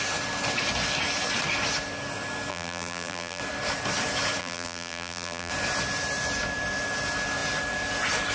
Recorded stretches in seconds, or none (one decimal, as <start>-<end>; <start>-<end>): 0.0-2.5; 3.4-4.4; 5.5-8.3